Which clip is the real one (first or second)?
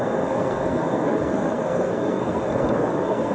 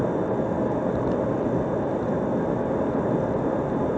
second